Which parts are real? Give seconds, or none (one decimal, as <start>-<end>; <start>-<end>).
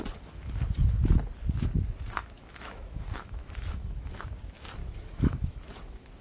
0.0-2.2; 4.1-4.8